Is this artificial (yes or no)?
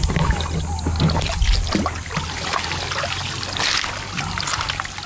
no